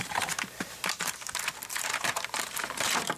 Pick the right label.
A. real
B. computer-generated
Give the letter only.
B